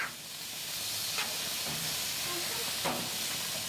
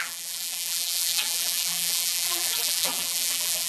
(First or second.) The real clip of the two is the first